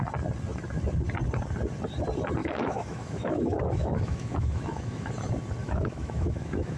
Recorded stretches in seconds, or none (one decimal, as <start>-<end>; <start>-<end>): 0.0-2.4; 5.1-5.6